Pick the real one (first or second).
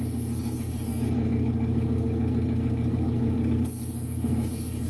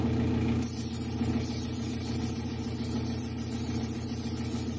second